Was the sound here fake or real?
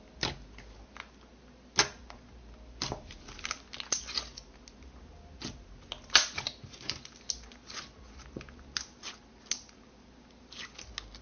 real